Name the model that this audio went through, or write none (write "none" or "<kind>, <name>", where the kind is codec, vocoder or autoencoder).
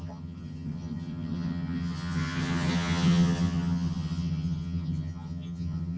vocoder, HiFi-GAN